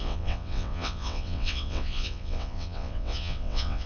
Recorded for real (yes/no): no